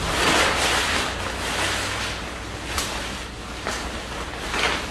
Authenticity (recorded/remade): recorded